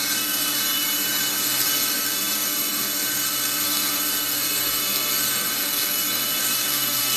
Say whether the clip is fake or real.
fake